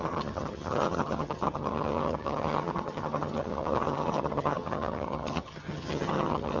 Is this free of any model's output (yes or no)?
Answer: no